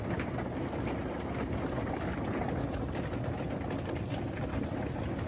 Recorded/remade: recorded